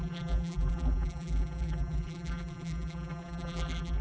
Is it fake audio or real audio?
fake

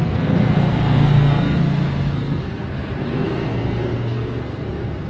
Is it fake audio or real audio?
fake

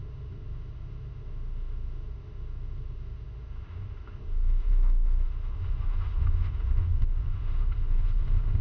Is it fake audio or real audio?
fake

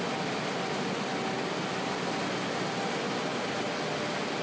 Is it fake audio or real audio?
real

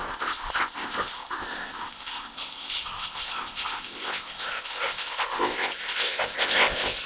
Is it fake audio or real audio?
fake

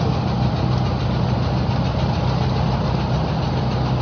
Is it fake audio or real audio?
real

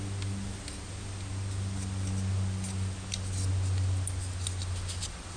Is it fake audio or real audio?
real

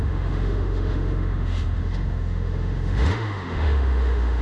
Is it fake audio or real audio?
fake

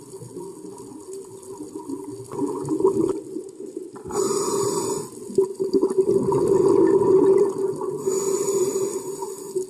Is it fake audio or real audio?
real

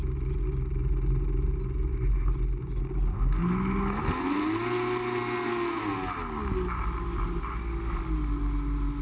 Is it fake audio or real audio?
real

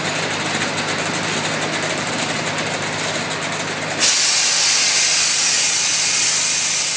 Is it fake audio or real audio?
real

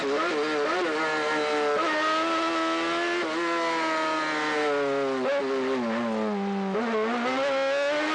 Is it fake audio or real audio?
real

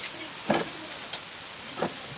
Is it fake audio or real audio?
real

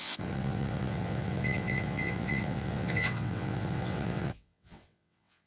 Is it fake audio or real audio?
fake